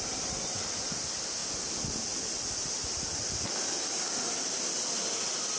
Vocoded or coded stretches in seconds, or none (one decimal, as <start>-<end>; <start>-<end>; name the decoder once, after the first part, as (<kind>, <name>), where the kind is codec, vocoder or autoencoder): none